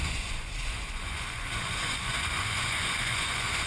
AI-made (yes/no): yes